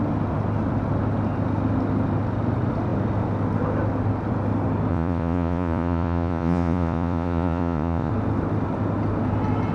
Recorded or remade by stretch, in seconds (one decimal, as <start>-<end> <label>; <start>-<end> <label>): 0.0-4.9 recorded; 4.9-8.1 remade; 8.1-9.7 recorded